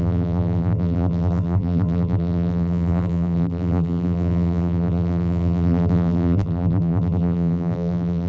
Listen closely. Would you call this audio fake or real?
fake